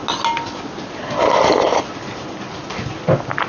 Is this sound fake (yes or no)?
no